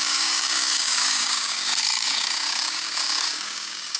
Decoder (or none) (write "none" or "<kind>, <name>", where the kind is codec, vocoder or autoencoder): codec, DAC